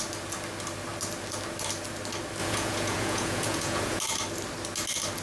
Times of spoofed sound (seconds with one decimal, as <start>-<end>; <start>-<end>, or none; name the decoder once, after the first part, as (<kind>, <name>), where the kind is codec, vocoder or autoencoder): 2.4-4.0 (vocoder, Vocos)